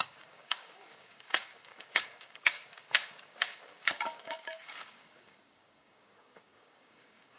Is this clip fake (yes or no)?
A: yes